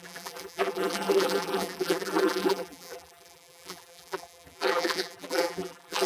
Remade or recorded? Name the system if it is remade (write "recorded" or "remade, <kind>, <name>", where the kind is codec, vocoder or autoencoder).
remade, vocoder, BigVGAN v2